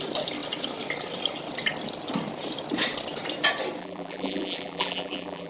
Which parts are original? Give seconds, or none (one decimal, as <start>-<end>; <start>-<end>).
0.0-3.8